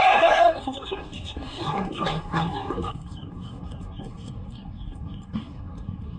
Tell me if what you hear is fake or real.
fake